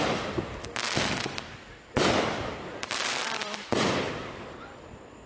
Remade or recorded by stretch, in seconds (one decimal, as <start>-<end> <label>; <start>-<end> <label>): 0.0-3.2 recorded; 3.2-4.0 remade; 4.0-5.3 recorded